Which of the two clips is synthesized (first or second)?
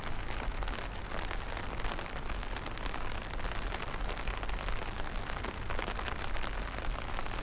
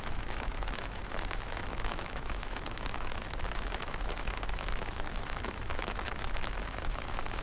second